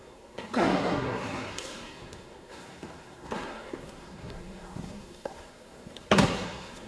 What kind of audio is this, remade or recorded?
remade